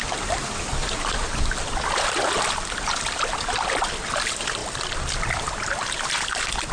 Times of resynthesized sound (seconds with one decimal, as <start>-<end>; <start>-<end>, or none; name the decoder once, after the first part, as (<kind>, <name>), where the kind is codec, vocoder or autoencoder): 0.9-4.6 (vocoder, BigVGAN v2)